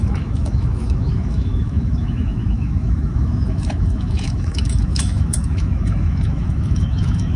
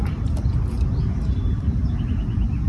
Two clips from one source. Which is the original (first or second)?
second